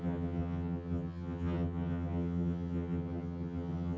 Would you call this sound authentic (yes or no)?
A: no